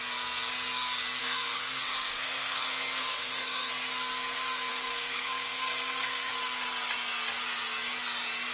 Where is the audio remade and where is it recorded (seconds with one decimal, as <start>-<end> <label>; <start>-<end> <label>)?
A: 0.0-1.2 recorded; 1.2-3.7 remade; 3.7-4.7 recorded; 4.7-6.3 remade; 6.3-8.5 recorded